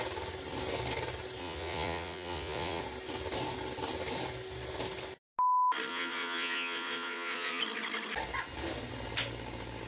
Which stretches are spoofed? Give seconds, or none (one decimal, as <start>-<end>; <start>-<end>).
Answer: 1.4-2.8; 5.9-7.6